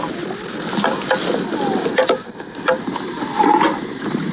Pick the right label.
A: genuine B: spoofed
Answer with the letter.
A